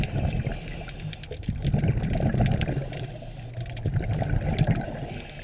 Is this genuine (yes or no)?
yes